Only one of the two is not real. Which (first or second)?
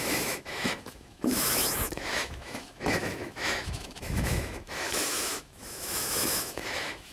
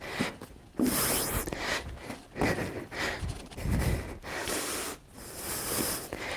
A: first